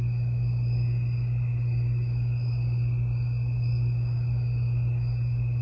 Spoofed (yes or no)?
no